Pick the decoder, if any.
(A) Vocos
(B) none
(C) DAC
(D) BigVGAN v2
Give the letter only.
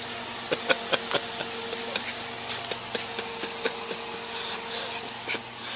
B